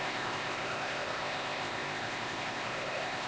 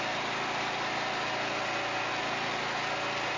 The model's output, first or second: first